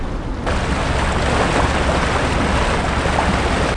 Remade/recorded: recorded